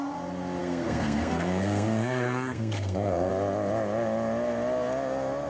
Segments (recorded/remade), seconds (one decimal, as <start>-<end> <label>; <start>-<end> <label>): 0.0-0.6 recorded; 0.6-3.3 remade; 3.3-5.5 recorded